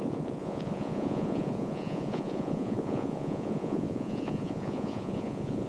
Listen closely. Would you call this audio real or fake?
fake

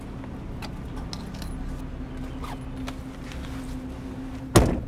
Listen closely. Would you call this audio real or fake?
real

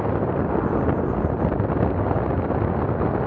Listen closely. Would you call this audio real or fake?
real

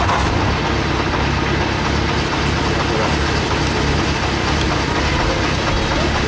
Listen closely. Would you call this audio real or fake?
real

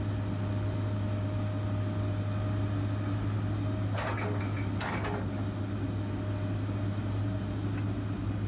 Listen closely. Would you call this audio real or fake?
real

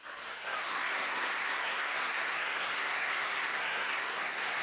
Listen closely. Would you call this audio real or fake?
fake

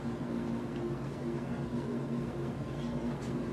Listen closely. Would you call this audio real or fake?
fake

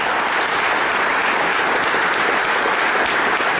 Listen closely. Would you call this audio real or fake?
real